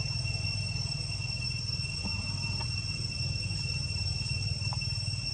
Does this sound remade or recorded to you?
recorded